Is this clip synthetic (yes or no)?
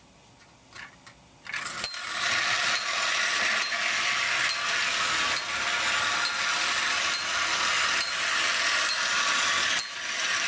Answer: no